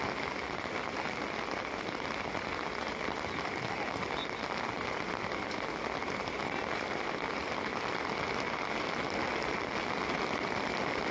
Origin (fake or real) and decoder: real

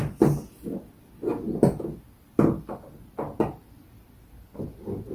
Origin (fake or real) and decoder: real